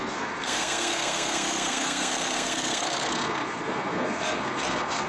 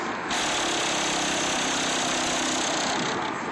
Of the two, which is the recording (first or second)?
second